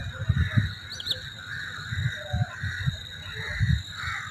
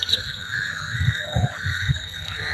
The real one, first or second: first